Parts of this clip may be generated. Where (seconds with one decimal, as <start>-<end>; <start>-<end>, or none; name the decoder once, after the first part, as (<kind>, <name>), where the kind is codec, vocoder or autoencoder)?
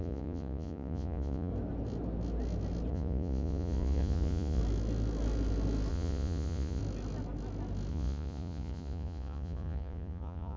0.0-1.5 (vocoder, Vocos); 2.9-4.6; 5.9-6.8; 7.9-10.6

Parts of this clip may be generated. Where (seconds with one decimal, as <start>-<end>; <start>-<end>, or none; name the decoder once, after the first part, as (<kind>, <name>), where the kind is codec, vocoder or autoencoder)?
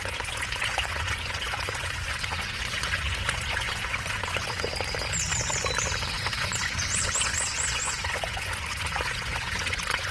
0.0-4.7 (vocoder, Vocos); 6.1-10.1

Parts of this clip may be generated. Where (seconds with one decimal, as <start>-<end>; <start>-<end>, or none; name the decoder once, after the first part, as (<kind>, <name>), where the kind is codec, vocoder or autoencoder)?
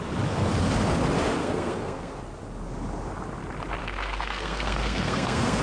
1.4-2.2 (codec, SNAC); 3.8-5.6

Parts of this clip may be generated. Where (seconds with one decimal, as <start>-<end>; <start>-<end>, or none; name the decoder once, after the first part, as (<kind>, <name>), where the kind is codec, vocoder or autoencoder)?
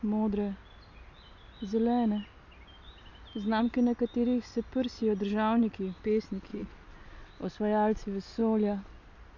6.5-7.3 (vocoder, Vocos)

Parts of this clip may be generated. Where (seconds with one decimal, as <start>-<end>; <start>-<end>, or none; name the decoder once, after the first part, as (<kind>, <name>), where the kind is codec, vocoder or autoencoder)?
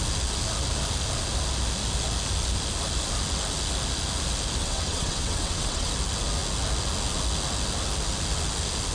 4.6-5.9 (vocoder, WaveNeXt)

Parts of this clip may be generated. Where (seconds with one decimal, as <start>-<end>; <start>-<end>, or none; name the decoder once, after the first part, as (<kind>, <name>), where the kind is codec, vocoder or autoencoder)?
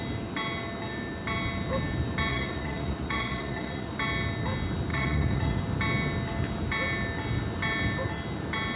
2.3-3.9 (vocoder, Vocos); 4.9-5.6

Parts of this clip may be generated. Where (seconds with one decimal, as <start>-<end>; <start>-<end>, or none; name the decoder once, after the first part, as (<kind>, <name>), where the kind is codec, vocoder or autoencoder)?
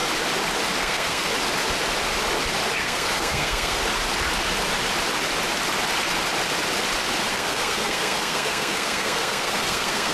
0.8-1.3 (codec, SNAC); 2.8-3.8; 7.3-10.1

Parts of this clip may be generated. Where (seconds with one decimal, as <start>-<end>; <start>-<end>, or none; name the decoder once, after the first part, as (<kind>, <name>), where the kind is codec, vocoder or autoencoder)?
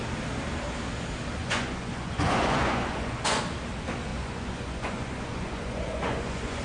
1.4-3.4 (vocoder, Vocos); 4.1-6.6